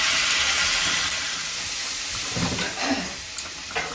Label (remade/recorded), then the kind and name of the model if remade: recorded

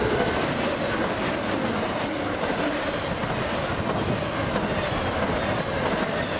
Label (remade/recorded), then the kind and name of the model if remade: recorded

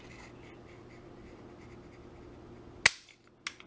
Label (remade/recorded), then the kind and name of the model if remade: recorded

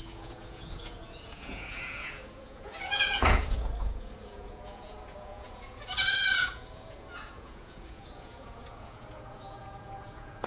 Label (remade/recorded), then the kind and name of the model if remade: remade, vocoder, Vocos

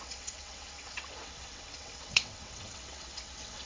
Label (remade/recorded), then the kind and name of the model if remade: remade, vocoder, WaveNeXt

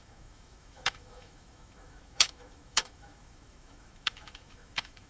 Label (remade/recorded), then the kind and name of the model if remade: remade, autoencoder, DAC-VAE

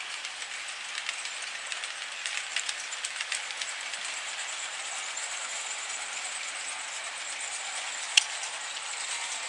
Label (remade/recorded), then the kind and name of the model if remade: recorded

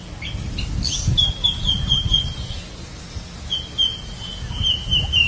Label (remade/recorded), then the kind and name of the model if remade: recorded